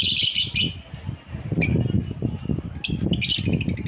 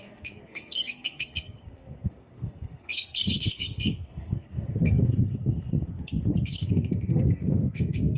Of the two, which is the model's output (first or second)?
second